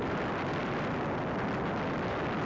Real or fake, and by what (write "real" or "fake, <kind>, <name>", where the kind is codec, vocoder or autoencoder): real